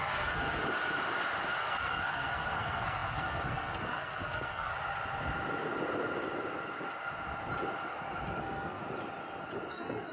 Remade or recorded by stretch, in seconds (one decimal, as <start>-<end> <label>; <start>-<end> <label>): 0.0-0.6 remade; 0.6-1.6 recorded; 1.6-4.7 remade; 4.7-8.4 recorded; 8.4-8.8 remade; 8.8-9.7 recorded; 9.7-10.1 remade